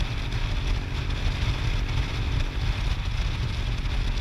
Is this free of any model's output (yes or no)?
yes